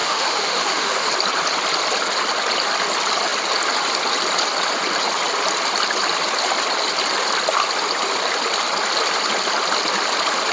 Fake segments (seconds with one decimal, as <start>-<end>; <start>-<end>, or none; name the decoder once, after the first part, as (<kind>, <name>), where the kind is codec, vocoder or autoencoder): 0.0-1.1 (autoencoder, DAC-VAE)

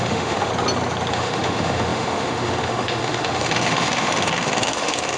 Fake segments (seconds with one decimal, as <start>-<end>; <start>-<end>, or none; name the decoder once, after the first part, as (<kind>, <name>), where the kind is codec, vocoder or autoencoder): 0.0-0.5 (autoencoder, DAC-VAE); 1.1-5.2

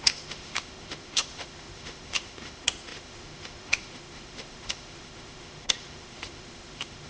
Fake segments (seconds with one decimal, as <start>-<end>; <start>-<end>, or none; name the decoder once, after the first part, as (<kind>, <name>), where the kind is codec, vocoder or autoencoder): 0.0-7.1 (autoencoder, DAC-VAE)